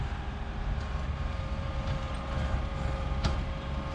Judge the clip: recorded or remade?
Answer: remade